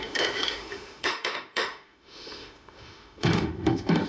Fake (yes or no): yes